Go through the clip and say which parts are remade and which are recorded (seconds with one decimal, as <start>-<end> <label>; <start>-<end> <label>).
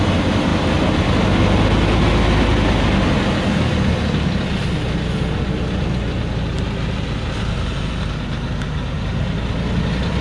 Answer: 0.0-10.2 recorded